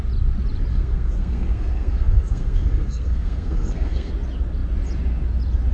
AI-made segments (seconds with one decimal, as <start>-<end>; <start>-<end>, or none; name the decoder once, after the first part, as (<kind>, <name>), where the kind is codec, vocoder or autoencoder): 0.7-4.1 (codec, SNAC)